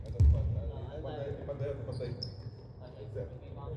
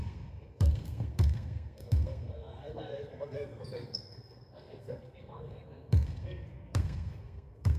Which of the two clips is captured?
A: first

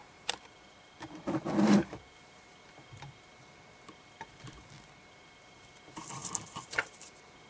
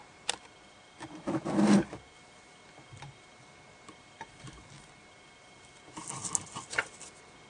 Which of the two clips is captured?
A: second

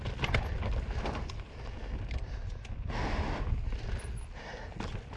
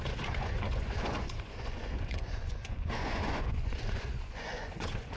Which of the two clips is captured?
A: first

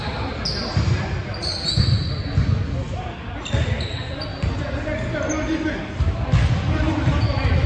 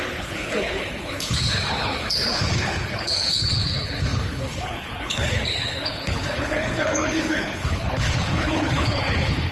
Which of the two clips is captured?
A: first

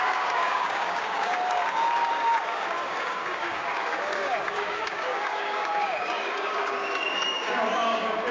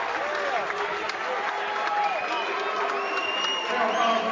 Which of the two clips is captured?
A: second